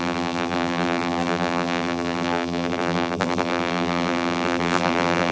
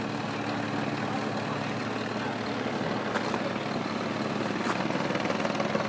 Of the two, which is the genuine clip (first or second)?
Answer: second